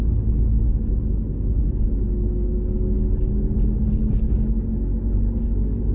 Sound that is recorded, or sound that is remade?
recorded